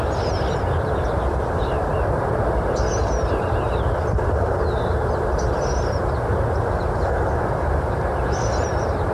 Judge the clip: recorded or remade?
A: recorded